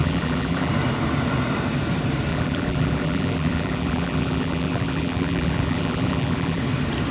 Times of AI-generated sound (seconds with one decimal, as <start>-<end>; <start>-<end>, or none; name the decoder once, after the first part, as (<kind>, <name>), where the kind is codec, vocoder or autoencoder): 0.0-0.7 (vocoder, BigVGAN v2); 2.3-6.6